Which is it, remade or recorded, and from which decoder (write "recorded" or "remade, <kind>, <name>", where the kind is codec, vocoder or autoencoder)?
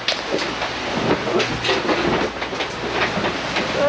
recorded